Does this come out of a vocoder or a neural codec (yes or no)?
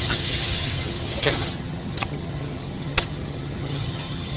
yes